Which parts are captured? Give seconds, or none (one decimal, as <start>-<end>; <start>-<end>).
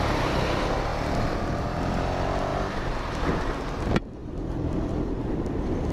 0.0-5.9